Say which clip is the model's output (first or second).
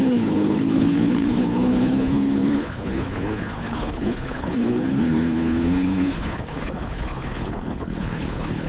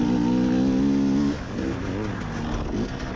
first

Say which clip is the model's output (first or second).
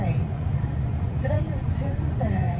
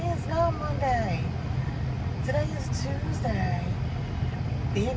first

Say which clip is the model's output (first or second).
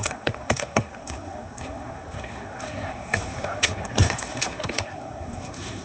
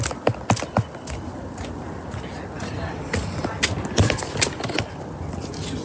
first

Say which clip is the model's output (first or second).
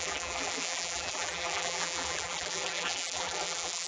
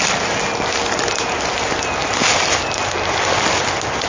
first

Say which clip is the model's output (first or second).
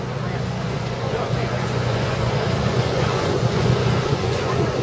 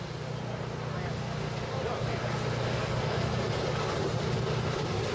first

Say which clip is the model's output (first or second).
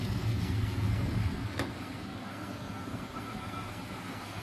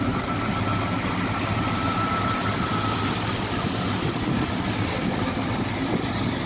first